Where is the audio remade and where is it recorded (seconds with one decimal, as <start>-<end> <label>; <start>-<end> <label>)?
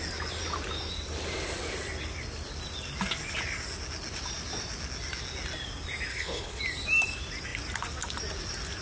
0.0-6.1 recorded; 6.1-6.6 remade; 6.6-8.8 recorded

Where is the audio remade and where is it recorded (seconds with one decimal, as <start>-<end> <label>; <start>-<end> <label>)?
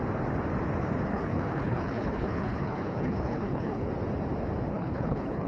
0.0-1.1 recorded; 1.1-3.9 remade; 3.9-4.7 recorded; 4.7-5.5 remade